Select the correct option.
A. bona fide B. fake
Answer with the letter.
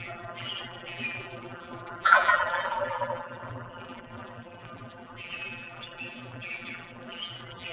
B